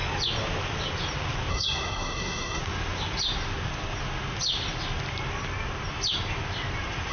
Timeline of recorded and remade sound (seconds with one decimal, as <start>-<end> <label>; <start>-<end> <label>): 0.0-1.5 recorded; 1.5-2.6 remade; 2.6-7.1 recorded